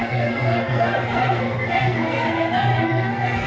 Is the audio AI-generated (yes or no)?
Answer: yes